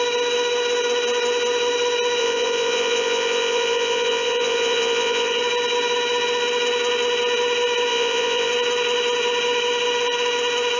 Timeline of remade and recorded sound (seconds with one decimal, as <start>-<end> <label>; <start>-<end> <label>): 0.0-2.2 recorded; 2.2-5.4 remade; 5.4-7.9 recorded; 7.9-8.5 remade; 8.5-10.8 recorded